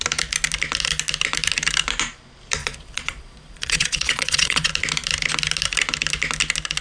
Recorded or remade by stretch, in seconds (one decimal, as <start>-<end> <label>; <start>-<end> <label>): 0.0-2.6 recorded; 2.6-4.7 remade; 4.7-6.8 recorded